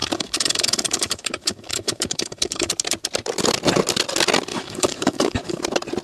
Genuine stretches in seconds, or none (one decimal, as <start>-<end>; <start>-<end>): 2.7-4.5; 5.6-6.0